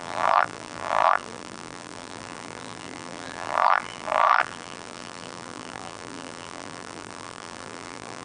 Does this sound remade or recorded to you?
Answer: remade